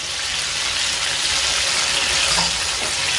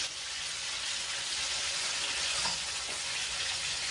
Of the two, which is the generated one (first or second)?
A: second